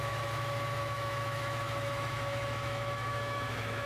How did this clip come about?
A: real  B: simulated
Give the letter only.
B